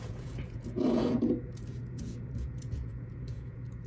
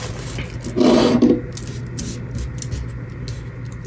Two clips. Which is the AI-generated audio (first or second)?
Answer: first